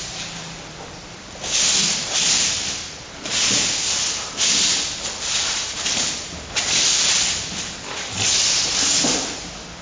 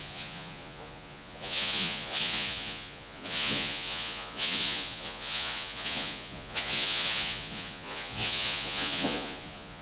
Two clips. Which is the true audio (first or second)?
first